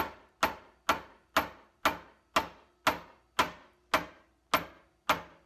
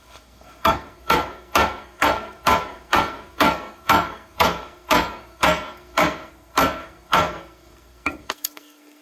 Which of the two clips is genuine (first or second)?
first